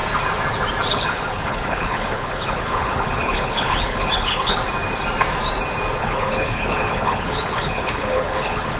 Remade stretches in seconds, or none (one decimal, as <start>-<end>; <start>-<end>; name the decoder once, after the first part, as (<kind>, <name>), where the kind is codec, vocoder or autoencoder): 0.9-4.6 (codec, HILCodec); 6.0-8.8